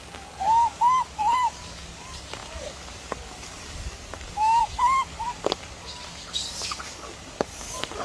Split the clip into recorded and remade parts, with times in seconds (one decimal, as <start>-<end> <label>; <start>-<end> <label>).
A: 0.0-8.0 remade